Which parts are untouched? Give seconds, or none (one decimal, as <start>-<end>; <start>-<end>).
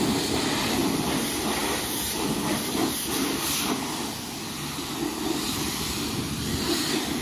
none